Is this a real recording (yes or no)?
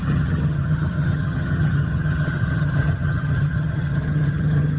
no